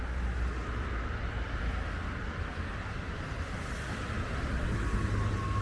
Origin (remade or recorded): recorded